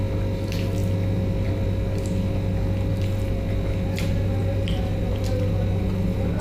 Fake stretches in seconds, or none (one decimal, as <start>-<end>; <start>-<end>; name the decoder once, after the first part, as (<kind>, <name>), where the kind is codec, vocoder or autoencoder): none